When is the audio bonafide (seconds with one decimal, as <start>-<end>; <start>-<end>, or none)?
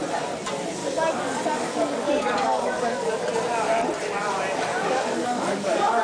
0.0-0.8; 3.2-4.7